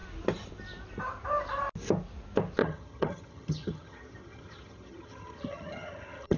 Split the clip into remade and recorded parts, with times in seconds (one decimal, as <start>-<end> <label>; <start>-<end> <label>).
0.0-2.6 recorded; 2.6-6.4 remade